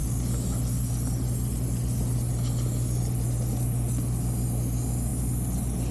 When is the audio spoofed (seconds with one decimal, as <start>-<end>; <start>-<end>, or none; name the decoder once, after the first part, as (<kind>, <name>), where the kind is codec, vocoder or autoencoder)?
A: none